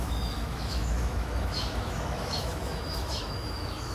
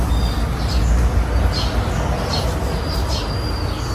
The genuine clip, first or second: second